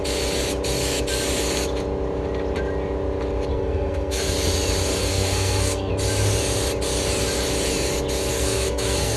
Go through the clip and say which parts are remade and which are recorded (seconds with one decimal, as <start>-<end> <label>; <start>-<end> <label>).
0.0-3.5 recorded; 3.5-4.3 remade; 4.3-5.0 recorded; 5.0-5.9 remade; 5.9-8.3 recorded; 8.3-9.2 remade